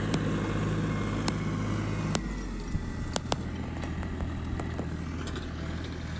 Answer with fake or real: real